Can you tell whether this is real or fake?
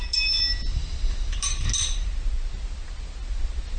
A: real